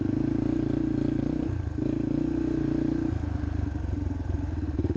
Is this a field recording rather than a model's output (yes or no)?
yes